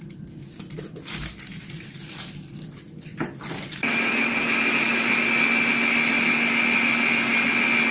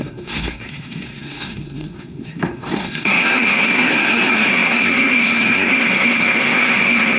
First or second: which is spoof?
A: second